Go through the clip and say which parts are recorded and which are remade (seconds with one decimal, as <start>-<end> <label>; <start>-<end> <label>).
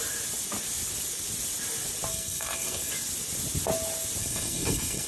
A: 0.0-2.1 recorded; 2.1-2.9 remade; 2.9-4.2 recorded; 4.2-5.1 remade